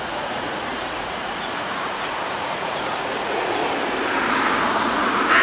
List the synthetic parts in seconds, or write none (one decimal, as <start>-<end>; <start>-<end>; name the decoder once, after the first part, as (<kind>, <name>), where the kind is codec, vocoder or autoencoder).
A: 0.0-3.6 (vocoder, Vocos); 4.7-5.4